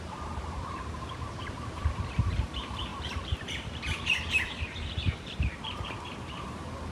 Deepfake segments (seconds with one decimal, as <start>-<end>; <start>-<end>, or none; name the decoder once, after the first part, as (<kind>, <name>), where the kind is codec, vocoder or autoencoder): 0.0-6.9 (vocoder, BigVGAN v2)